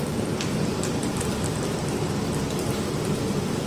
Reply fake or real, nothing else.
real